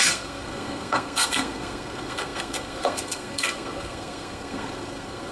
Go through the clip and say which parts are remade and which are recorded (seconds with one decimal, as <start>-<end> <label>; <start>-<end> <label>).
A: 0.0-5.3 remade